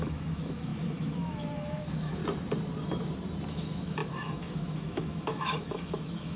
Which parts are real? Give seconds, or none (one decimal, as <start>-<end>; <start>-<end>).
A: 2.2-3.5